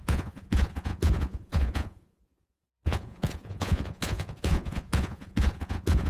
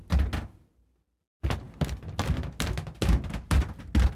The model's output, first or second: first